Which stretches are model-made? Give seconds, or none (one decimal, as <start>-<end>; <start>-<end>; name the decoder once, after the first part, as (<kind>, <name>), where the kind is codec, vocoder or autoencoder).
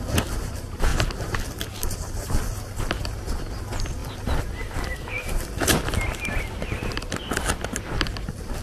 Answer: 4.0-5.5 (vocoder, BigVGAN v2)